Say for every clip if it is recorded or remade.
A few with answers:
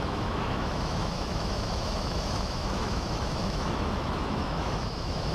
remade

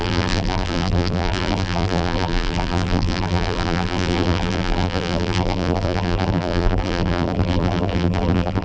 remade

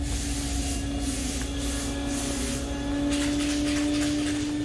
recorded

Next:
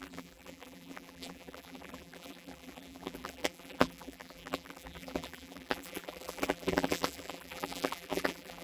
remade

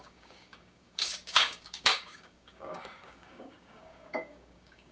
remade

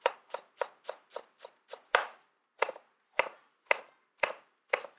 recorded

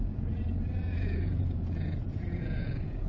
remade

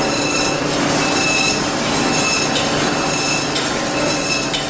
recorded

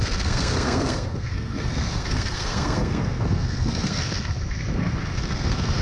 remade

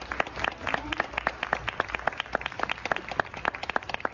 recorded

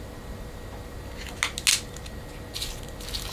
recorded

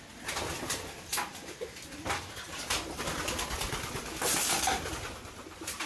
recorded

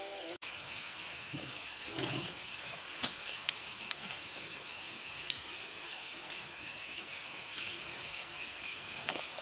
remade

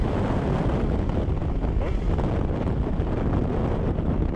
recorded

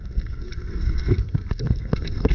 remade